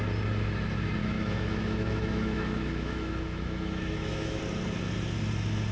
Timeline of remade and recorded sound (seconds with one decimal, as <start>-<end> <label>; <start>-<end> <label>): 0.0-1.0 recorded; 1.0-4.4 remade; 4.4-5.7 recorded